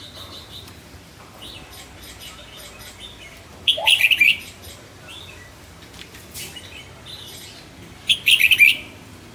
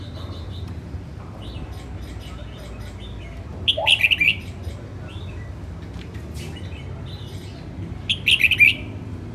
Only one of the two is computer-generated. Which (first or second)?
first